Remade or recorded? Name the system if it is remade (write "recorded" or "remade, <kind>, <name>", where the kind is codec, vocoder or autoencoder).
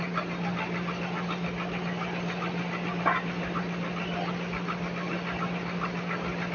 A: recorded